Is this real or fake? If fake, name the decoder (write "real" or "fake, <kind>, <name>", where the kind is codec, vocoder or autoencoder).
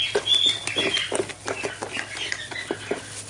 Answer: real